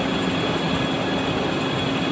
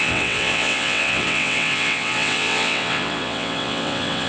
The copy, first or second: second